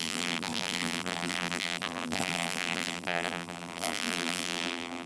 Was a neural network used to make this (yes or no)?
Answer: yes